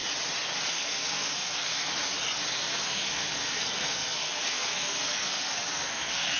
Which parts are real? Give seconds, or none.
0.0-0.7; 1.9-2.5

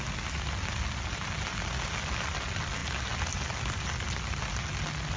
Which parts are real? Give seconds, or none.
0.0-5.2